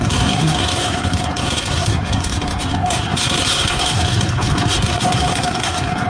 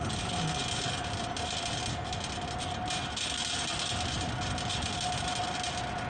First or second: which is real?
second